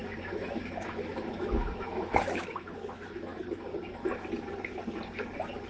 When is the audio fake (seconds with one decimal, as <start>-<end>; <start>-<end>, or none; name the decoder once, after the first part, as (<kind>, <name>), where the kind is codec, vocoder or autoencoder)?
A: 0.0-3.3 (autoencoder, DAC-VAE)